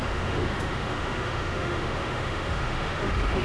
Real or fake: fake